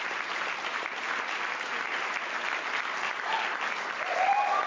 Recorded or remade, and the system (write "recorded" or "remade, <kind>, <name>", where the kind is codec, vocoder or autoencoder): recorded